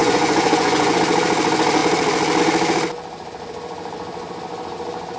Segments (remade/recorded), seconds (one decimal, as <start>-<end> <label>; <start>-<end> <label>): 0.0-1.0 remade; 1.0-5.2 recorded